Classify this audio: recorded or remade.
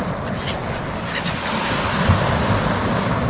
recorded